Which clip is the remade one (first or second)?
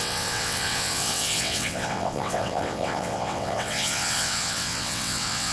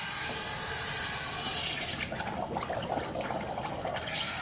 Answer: first